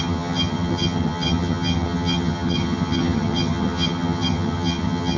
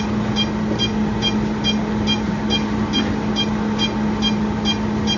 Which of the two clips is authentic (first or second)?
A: second